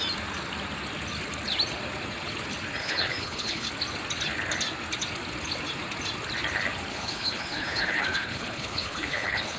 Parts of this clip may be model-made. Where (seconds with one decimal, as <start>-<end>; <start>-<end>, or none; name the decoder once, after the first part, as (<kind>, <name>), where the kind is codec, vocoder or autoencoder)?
2.8-3.7 (codec, HILCodec); 6.9-9.6